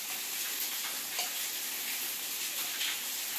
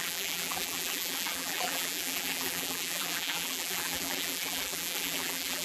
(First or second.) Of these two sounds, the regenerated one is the second